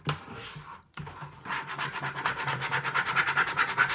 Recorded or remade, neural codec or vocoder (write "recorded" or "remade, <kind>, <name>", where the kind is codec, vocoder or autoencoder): recorded